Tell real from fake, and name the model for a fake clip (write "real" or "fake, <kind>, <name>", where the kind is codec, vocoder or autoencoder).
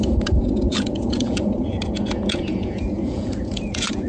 fake, vocoder, Vocos